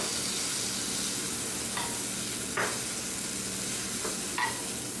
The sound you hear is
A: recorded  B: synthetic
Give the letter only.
A